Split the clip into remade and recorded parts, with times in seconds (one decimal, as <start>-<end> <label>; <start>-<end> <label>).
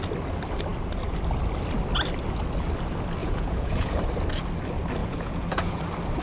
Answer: 0.0-3.2 recorded; 3.2-4.0 remade; 4.0-5.0 recorded; 5.0-5.8 remade; 5.8-6.2 recorded